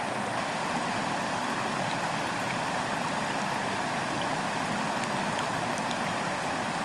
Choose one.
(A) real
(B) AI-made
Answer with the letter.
A